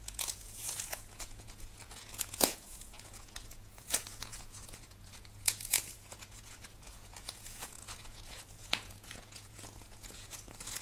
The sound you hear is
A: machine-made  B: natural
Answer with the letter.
A